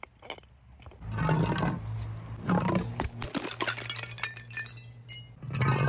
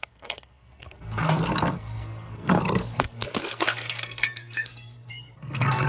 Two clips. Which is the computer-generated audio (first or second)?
second